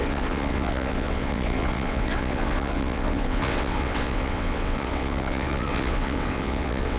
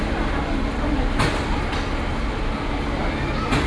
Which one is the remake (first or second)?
first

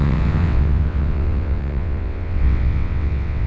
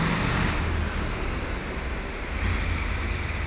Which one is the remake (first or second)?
first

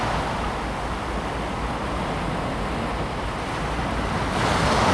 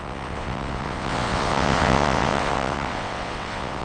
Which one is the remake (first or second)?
second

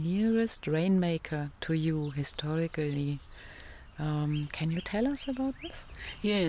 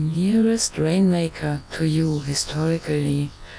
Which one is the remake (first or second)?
second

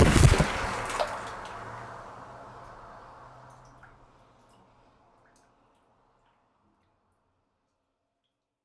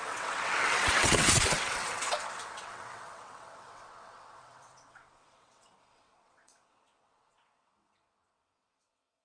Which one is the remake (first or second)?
second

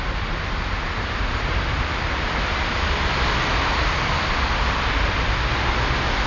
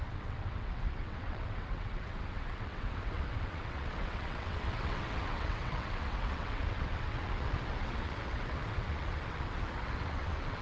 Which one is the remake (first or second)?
second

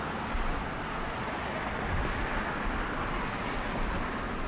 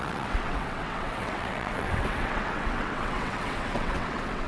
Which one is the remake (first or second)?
second